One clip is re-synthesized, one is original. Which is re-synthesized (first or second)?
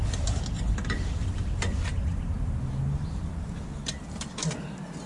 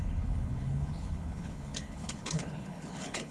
second